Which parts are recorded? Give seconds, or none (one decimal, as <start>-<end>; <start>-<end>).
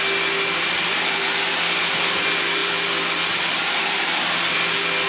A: 0.0-2.6; 4.4-5.1